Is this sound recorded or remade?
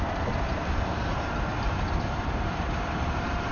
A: remade